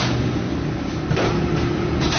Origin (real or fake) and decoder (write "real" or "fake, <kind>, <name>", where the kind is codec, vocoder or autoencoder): real